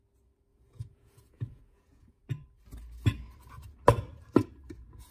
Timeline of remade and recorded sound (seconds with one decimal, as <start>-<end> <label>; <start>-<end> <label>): 0.0-0.5 recorded; 0.5-2.2 remade; 2.2-5.1 recorded